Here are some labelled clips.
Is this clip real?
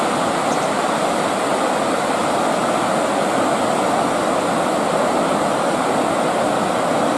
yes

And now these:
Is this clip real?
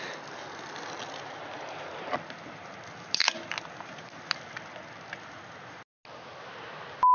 yes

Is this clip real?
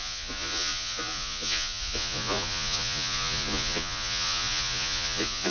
no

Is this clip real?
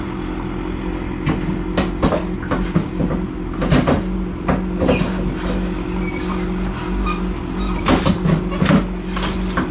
yes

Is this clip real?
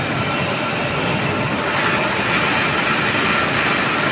yes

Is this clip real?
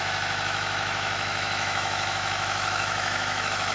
no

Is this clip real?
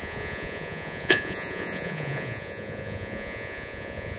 no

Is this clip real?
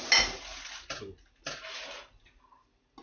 yes